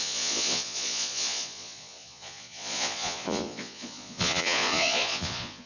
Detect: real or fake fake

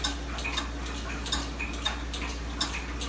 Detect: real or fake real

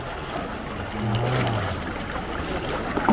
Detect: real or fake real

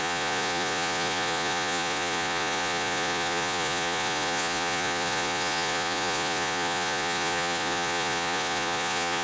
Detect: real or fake fake